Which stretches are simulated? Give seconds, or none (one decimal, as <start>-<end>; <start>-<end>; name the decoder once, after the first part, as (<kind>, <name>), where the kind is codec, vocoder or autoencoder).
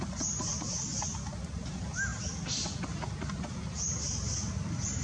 none